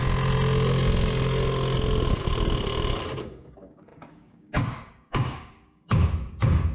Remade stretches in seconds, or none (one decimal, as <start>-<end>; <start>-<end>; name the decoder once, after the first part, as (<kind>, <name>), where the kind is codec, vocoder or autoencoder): 3.1-6.7 (codec, DAC)